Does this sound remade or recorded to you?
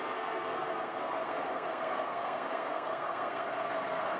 remade